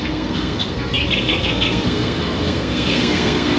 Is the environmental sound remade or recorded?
remade